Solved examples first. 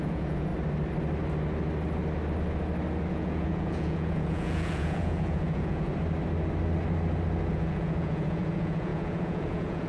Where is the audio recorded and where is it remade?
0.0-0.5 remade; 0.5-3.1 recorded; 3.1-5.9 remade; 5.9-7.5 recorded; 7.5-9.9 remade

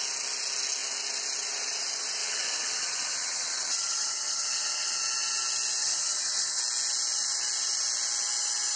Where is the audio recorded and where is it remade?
0.0-2.2 recorded; 2.2-5.0 remade; 5.0-5.8 recorded; 5.8-6.6 remade; 6.6-8.8 recorded

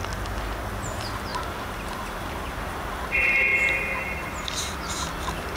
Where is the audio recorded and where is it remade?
0.0-5.6 recorded